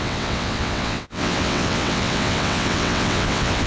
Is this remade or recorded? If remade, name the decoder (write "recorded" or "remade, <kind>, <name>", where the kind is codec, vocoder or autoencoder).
remade, vocoder, WaveNeXt